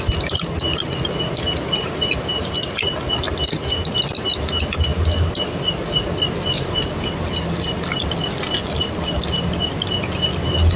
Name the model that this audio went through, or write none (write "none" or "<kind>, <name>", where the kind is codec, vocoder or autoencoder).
none